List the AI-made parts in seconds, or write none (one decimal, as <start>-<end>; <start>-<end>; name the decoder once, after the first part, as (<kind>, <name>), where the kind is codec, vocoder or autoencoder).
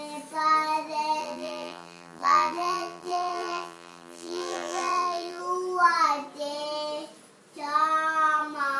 1.2-5.4 (vocoder, BigVGAN v2)